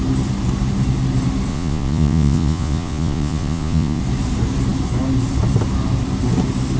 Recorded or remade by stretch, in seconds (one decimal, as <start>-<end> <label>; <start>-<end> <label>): 0.0-1.5 recorded; 1.5-4.0 remade; 4.0-6.8 recorded